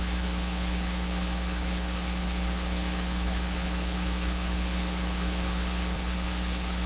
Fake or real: fake